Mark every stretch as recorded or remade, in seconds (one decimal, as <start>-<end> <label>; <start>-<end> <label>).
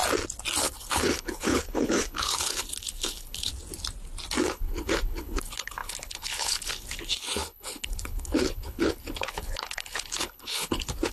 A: 0.0-0.6 recorded; 0.6-3.5 remade; 3.5-4.4 recorded; 4.4-11.1 remade